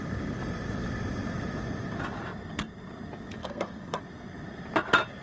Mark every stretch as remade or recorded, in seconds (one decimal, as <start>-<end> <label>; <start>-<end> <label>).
0.0-3.4 recorded; 3.4-4.0 remade; 4.0-5.2 recorded